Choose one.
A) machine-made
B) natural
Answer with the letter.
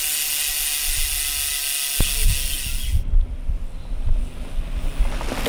B